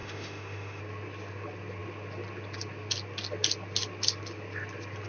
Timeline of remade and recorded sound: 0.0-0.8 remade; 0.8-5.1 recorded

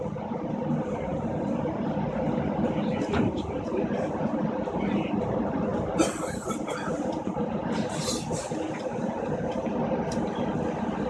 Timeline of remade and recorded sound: 0.0-11.1 recorded

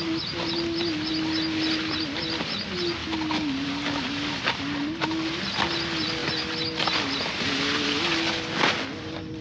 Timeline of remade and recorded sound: 0.0-9.4 recorded

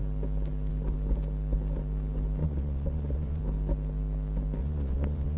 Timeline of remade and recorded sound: 0.0-2.4 recorded; 2.4-3.4 remade; 3.4-4.6 recorded; 4.6-5.4 remade